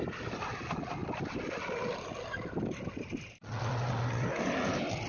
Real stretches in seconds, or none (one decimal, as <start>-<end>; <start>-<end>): 0.0-5.1